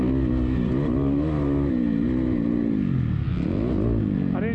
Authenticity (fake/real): real